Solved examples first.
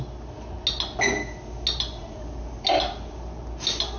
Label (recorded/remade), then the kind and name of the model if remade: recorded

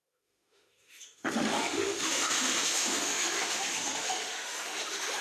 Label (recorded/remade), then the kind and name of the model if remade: remade, autoencoder, DAC-VAE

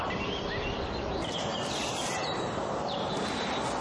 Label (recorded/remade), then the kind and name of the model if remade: recorded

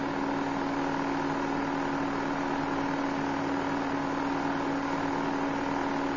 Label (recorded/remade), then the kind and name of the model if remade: recorded